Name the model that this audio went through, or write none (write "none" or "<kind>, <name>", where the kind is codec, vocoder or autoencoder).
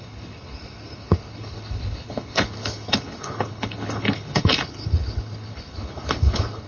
codec, HILCodec